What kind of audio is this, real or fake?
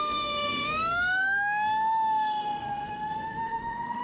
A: fake